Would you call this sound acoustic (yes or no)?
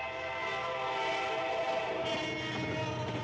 yes